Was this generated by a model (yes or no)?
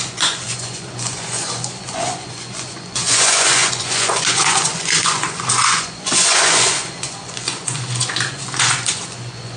yes